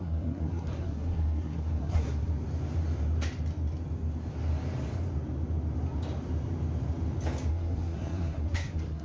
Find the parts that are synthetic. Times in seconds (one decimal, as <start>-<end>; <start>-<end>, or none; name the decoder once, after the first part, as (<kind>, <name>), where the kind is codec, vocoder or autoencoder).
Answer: 0.0-2.3 (codec, SNAC); 7.5-9.0